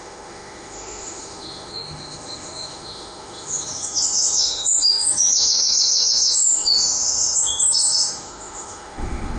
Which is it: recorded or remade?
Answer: remade